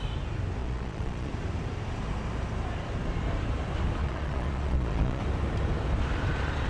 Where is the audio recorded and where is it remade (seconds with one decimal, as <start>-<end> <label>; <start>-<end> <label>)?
0.0-0.6 recorded; 0.6-1.3 remade; 1.3-4.0 recorded; 4.0-5.2 remade; 5.2-6.7 recorded